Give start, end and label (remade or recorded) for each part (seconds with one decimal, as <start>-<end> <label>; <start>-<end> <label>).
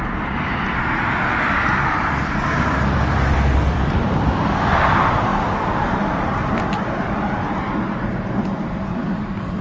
0.0-9.6 recorded